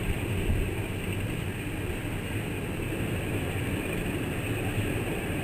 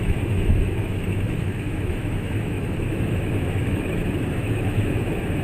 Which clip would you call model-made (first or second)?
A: second